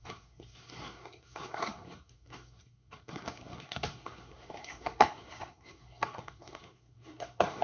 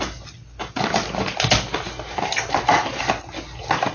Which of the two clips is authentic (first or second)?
second